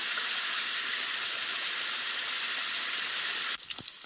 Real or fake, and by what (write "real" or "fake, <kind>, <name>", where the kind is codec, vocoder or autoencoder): real